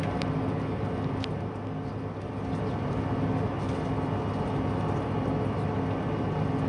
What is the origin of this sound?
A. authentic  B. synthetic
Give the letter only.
A